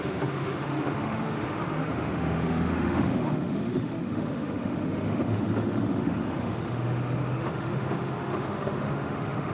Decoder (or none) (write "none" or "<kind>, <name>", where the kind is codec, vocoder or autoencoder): autoencoder, DAC-VAE